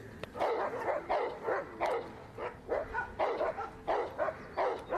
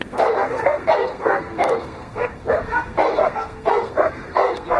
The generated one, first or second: second